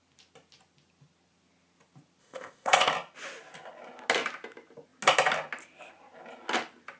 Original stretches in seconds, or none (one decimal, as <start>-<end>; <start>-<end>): 0.0-2.2; 2.9-7.0

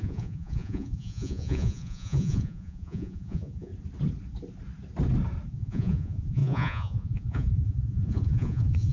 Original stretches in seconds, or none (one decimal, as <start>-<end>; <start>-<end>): 3.7-5.5

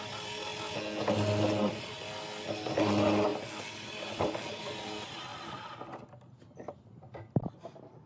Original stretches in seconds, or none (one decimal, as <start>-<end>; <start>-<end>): 0.0-8.1

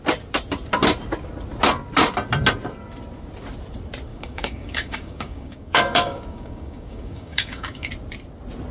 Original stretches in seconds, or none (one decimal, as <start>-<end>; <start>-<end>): 0.0-4.1; 7.9-8.7

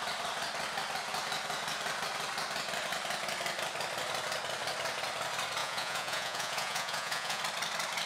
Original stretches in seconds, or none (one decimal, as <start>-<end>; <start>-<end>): 0.0-5.6; 7.4-8.1

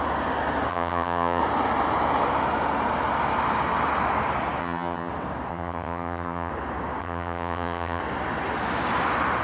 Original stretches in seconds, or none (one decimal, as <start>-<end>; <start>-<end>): 0.0-0.7; 1.4-4.6; 5.1-5.5; 6.5-7.0; 8.0-9.4

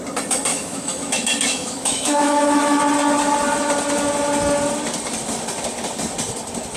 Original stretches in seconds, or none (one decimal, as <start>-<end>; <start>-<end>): 0.0-0.5; 2.8-6.8

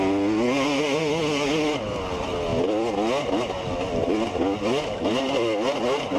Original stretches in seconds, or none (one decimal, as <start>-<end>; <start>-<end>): 0.0-6.2